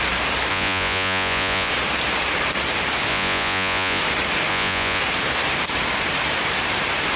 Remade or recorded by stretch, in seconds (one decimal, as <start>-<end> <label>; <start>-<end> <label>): 0.0-0.5 recorded; 0.5-1.7 remade; 1.7-3.1 recorded; 3.1-4.0 remade; 4.0-4.5 recorded; 4.5-5.0 remade; 5.0-7.2 recorded